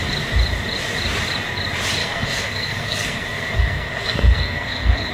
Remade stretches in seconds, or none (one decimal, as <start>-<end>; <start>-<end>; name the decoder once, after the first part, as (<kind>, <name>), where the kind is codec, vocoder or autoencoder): 2.0-5.1 (codec, SNAC)